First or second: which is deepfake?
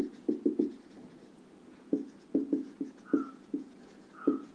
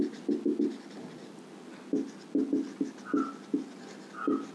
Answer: first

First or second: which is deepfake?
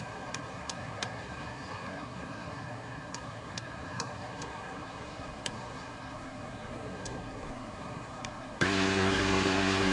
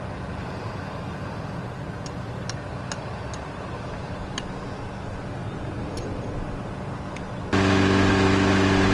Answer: first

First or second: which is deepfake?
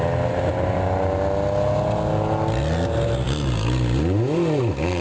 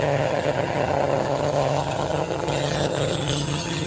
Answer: second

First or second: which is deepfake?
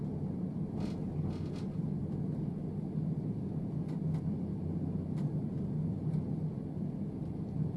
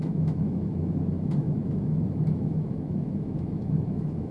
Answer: second